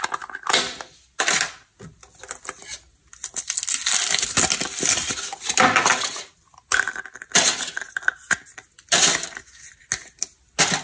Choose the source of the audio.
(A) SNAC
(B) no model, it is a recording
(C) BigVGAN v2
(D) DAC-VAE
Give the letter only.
B